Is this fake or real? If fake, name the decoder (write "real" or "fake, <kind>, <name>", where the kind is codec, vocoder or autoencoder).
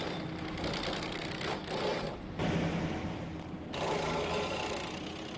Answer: real